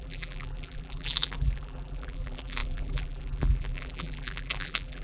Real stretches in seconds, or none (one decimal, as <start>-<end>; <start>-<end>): none